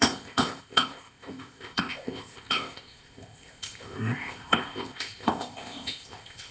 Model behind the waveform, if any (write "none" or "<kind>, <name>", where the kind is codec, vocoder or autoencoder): codec, ZipCodec